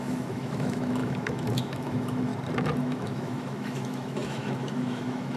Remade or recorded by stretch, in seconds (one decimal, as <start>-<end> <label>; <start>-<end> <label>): 0.0-2.3 remade; 2.3-2.8 recorded; 2.8-5.4 remade